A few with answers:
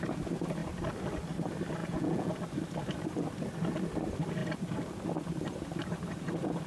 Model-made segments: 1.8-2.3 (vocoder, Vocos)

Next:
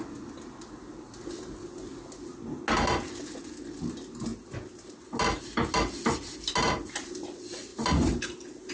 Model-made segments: none

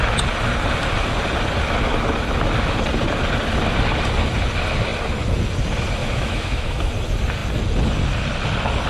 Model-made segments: 6.0-6.9 (autoencoder, DAC-VAE)

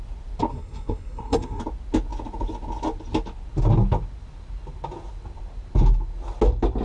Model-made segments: 0.5-1.6 (codec, SNAC)

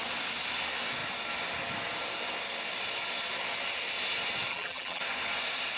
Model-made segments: 4.5-5.0 (vocoder, BigVGAN v2)

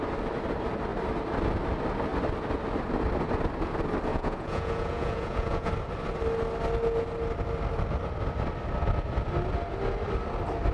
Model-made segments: 4.1-5.7 (vocoder, Vocos)